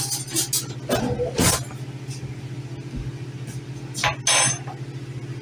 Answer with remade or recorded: recorded